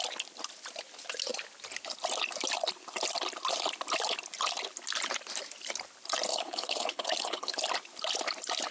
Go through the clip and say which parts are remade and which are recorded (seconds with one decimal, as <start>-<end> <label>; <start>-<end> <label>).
0.0-6.3 recorded; 6.3-7.6 remade; 7.6-8.7 recorded